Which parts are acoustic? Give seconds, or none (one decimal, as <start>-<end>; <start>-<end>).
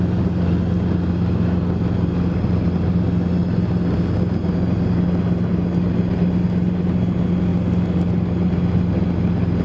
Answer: 0.0-9.6